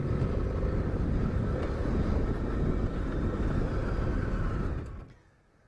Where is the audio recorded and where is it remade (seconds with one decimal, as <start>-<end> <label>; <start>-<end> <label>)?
0.0-5.7 recorded